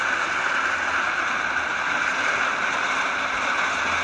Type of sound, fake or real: real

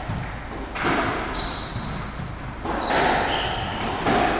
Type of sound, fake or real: real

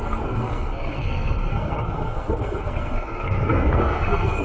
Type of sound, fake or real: fake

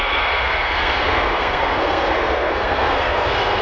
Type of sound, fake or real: fake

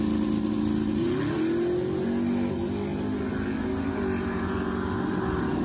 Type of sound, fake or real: real